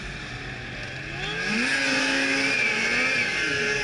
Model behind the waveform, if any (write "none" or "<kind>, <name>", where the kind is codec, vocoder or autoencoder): none